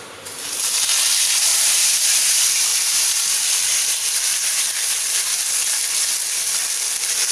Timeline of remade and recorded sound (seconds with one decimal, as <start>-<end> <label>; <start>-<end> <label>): 0.0-1.5 recorded; 1.5-2.2 remade; 2.2-4.3 recorded; 4.3-5.4 remade; 5.4-7.3 recorded